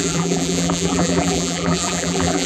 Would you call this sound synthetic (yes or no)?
yes